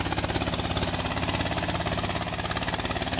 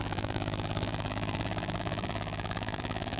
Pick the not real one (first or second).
second